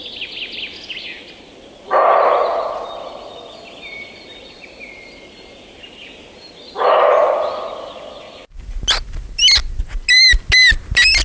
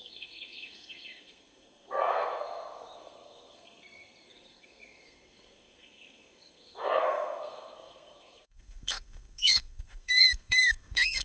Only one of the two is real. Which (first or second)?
first